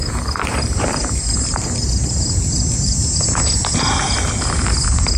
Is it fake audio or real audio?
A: real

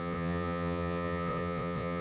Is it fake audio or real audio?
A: fake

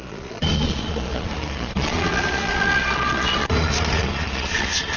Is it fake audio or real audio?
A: fake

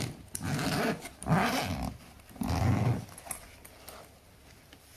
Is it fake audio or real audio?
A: real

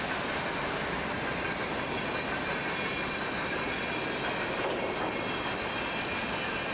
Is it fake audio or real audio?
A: real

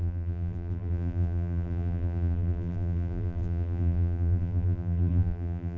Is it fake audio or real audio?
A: fake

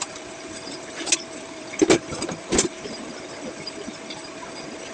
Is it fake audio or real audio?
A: real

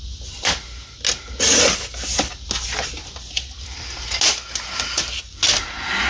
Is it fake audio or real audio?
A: real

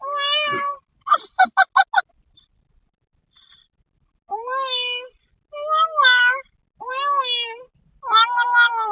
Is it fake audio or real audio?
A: real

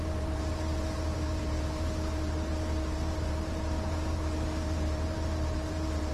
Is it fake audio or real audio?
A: fake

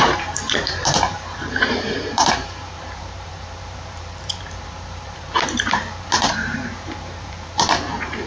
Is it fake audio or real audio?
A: fake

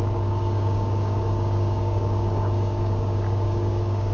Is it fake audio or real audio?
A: fake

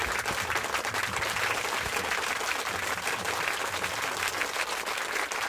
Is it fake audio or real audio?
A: real